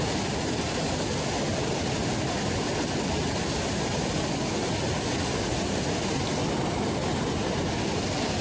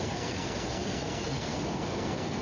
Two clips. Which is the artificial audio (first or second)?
second